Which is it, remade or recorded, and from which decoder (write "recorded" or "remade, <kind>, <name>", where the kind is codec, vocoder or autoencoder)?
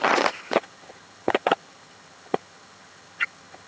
remade, vocoder, HiFi-GAN